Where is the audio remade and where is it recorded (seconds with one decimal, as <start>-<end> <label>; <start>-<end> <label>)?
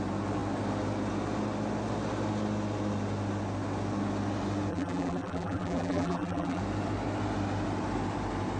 0.0-4.7 recorded; 4.7-6.6 remade; 6.6-8.6 recorded